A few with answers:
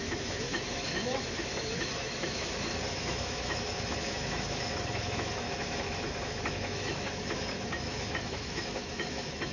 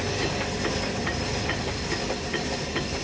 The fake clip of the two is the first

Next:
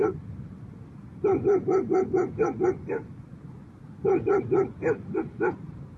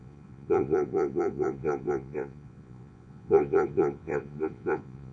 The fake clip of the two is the second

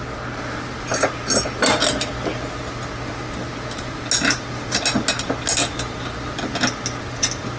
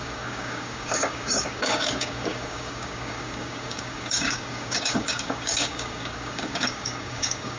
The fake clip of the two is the second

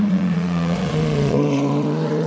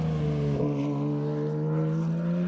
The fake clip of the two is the first